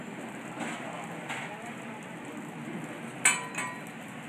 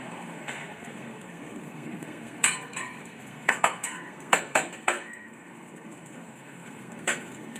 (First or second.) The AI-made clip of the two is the second